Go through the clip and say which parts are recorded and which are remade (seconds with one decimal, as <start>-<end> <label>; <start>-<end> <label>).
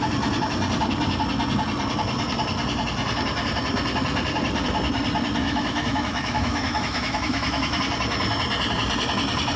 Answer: 0.0-5.4 recorded; 5.4-7.8 remade; 7.8-9.6 recorded